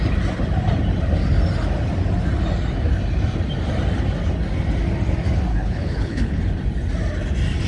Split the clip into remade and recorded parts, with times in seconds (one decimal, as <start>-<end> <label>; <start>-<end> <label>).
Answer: 0.0-5.5 recorded; 5.5-6.4 remade; 6.4-7.7 recorded